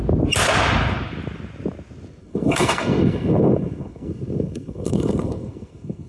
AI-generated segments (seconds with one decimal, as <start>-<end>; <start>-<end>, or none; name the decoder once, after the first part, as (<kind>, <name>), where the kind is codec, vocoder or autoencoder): 2.2-6.1 (codec, SNAC)

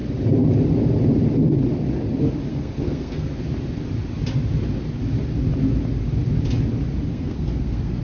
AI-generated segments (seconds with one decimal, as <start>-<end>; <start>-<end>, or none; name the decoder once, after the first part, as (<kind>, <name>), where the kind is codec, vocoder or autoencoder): 2.5-3.3 (codec, SNAC); 7.1-8.0

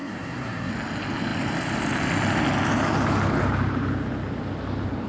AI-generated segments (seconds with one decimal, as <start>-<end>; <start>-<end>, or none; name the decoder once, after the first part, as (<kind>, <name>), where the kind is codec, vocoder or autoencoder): 0.0-0.7 (codec, SNAC)

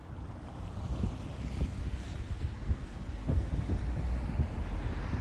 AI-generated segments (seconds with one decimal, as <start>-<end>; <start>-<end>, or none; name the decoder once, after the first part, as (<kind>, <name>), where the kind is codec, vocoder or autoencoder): 1.8-3.5 (codec, SNAC)

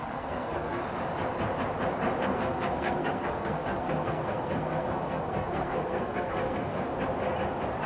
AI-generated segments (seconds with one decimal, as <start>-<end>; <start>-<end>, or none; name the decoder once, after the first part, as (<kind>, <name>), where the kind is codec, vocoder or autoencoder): 0.0-0.8 (codec, SNAC); 2.2-6.9

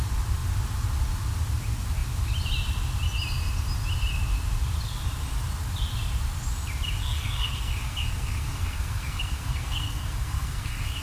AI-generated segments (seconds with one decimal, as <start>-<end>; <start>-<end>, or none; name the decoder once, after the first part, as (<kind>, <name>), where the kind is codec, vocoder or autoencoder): 7.0-11.0 (codec, SNAC)

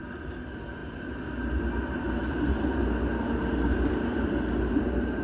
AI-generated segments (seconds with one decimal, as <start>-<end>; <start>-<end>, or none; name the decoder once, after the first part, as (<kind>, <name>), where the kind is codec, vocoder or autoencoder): none

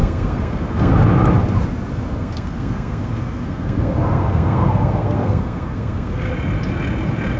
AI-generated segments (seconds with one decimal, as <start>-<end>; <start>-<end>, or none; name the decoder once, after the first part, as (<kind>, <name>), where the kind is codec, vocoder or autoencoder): 0.0-0.9 (codec, SNAC); 1.9-6.3